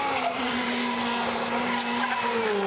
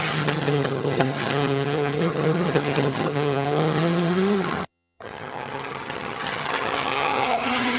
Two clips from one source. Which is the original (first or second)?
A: first